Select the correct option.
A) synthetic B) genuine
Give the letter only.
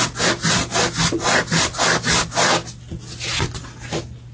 B